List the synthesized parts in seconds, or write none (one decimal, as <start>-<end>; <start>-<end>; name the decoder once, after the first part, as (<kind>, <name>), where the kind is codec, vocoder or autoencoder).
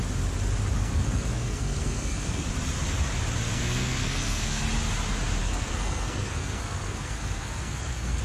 0.8-2.5 (codec, SNAC); 3.5-4.6; 5.4-8.2